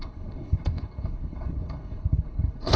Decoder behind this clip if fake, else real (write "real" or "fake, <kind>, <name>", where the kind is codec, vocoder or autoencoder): fake, codec, HILCodec